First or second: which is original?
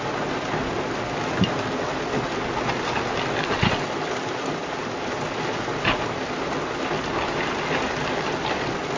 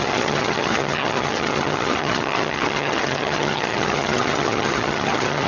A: first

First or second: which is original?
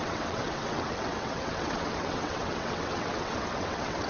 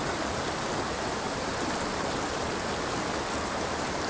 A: second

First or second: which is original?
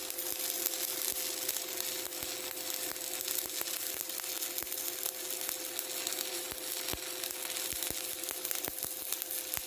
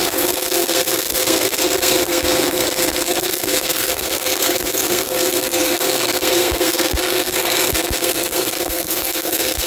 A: first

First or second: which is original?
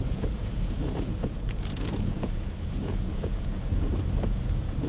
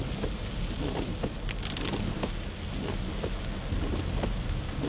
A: second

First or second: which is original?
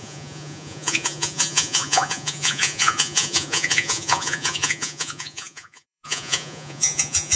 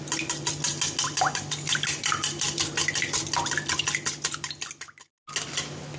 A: second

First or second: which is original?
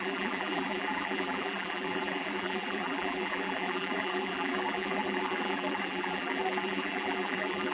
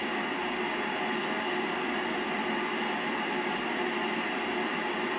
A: second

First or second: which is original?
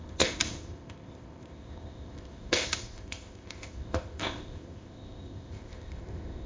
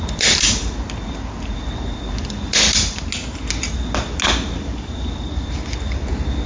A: second